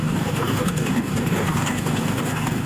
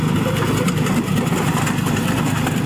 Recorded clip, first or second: second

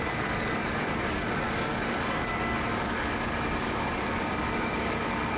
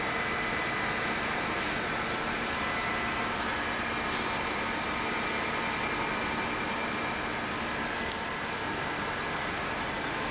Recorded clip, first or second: second